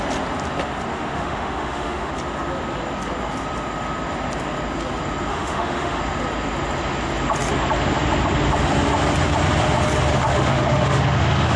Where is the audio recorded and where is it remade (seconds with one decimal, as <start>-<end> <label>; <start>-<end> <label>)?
0.0-0.9 recorded; 0.9-2.1 remade; 2.1-5.3 recorded; 5.3-6.0 remade; 6.0-10.1 recorded; 10.1-11.6 remade